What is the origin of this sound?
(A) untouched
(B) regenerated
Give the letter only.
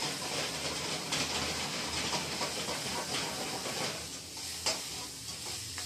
A